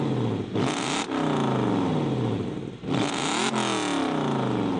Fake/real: real